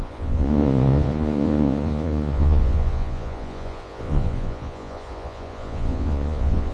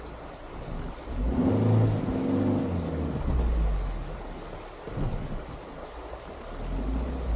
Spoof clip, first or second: first